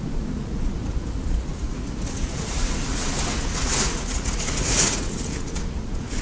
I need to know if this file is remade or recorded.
remade